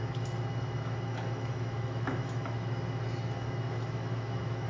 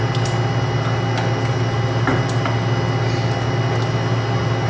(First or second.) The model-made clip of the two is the first